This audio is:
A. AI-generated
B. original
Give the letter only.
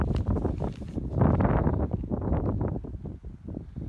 B